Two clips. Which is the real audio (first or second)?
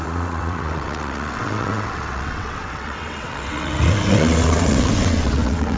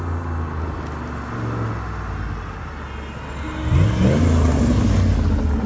second